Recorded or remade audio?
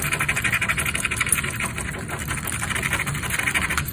recorded